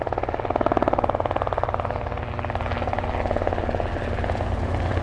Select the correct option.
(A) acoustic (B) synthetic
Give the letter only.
A